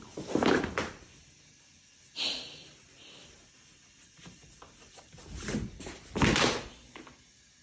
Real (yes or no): yes